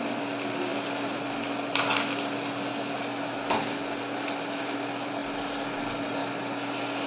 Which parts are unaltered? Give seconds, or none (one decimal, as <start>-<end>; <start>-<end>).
0.0-7.1